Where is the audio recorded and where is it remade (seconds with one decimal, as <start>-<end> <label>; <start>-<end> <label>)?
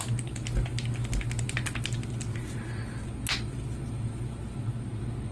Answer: 0.0-5.3 recorded